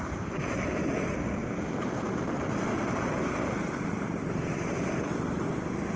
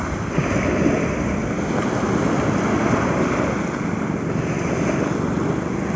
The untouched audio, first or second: second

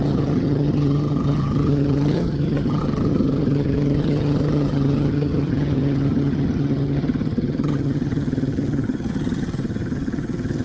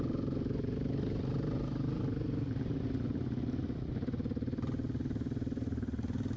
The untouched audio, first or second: second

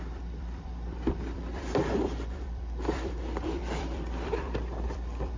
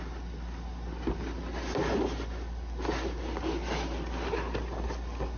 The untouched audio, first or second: second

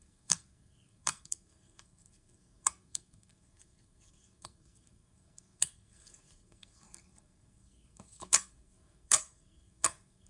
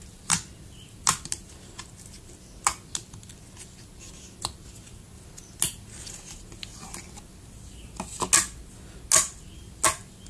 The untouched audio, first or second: second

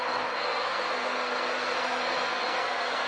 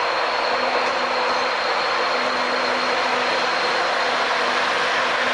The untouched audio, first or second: second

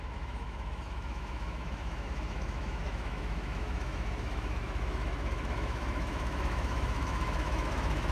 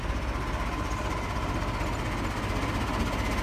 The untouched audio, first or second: second